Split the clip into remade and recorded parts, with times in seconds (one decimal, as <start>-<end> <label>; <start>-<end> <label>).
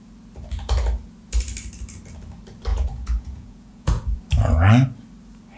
0.0-2.7 recorded; 2.7-4.2 remade; 4.2-5.6 recorded